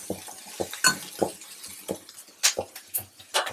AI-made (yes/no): no